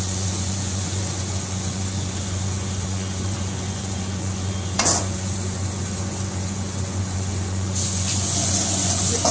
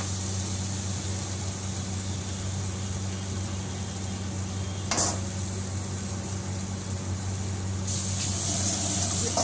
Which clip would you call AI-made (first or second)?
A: first